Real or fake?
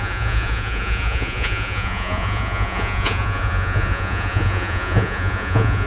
fake